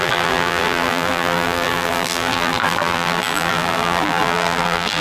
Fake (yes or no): yes